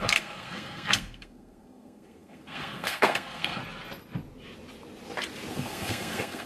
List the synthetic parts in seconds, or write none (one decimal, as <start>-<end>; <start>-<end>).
0.0-3.6; 5.5-6.5